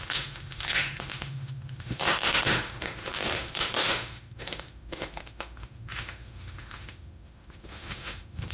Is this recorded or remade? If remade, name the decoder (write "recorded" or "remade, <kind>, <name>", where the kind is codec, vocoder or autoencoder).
remade, autoencoder, DAC-VAE